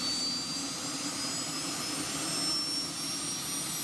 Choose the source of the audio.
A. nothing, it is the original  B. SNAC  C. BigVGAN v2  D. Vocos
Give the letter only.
A